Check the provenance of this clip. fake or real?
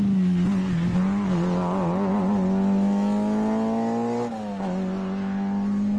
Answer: real